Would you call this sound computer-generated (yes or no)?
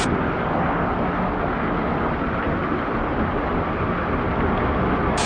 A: no